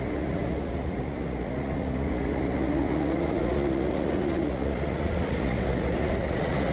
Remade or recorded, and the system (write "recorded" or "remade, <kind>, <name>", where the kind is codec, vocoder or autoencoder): remade, vocoder, Vocos